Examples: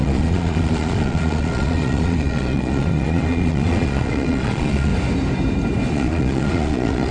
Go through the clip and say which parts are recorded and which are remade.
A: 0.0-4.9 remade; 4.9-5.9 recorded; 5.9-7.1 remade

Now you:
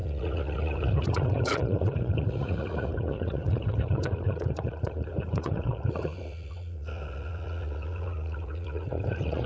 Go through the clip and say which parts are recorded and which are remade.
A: 0.0-9.5 remade